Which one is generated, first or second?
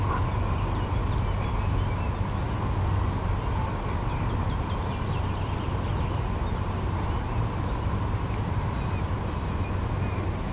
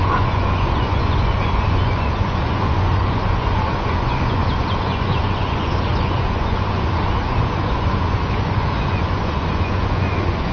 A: second